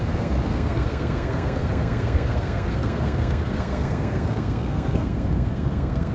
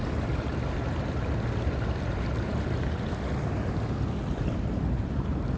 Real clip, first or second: second